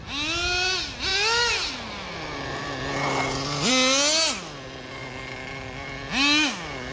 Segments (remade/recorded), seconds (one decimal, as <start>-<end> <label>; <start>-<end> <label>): 0.0-6.9 recorded